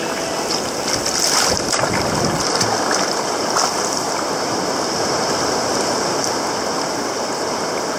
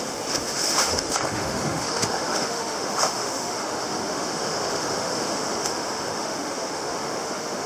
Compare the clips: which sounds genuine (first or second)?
first